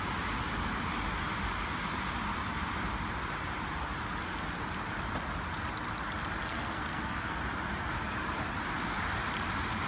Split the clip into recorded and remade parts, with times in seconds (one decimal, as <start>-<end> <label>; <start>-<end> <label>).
0.0-6.4 recorded; 6.4-7.4 remade; 7.4-9.9 recorded